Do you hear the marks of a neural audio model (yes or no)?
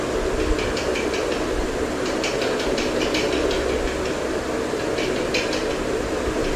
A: no